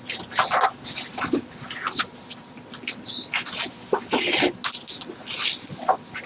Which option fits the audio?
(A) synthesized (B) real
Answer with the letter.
B